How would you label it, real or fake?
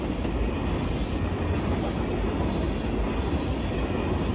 real